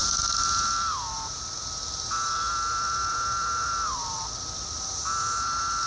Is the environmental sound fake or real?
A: real